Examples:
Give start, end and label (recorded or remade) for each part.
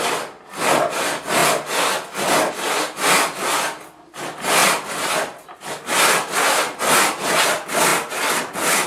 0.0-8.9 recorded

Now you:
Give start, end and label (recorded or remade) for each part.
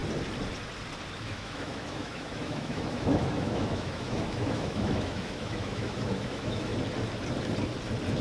0.0-1.2 recorded; 1.2-6.7 remade; 6.7-8.2 recorded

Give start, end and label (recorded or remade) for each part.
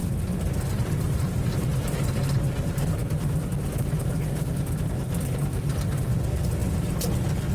0.0-7.5 recorded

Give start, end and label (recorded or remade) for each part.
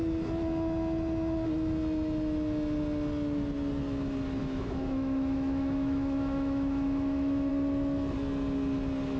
0.0-4.4 recorded; 4.4-7.5 remade; 7.5-9.2 recorded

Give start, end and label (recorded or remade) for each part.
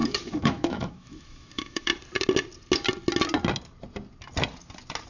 0.0-1.9 remade; 1.9-5.1 recorded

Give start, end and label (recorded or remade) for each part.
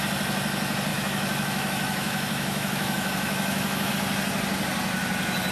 0.0-0.9 recorded; 0.9-3.9 remade; 3.9-5.5 recorded